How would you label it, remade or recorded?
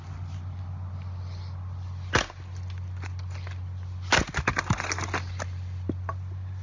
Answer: recorded